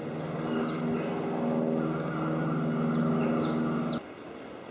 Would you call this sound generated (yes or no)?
no